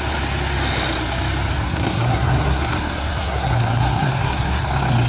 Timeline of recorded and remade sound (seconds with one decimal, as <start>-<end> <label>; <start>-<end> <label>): 0.0-1.5 recorded; 1.5-4.6 remade; 4.6-5.1 recorded